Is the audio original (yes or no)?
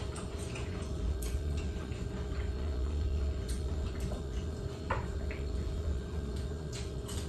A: no